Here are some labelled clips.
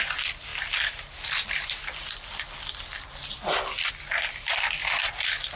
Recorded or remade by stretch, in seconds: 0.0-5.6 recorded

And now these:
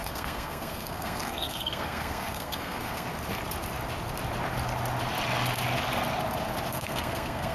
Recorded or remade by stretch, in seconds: 0.0-3.1 remade; 3.1-6.7 recorded; 6.7-7.5 remade

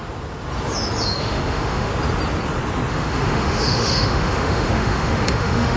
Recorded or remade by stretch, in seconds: 0.0-1.2 recorded; 1.2-1.9 remade; 1.9-2.9 recorded; 2.9-5.8 remade

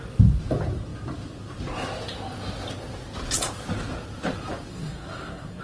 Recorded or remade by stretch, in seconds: 0.0-4.7 recorded; 4.7-5.6 remade